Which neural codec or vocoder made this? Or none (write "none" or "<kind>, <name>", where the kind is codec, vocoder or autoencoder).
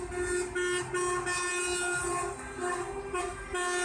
none